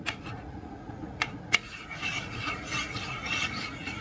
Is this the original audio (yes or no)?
no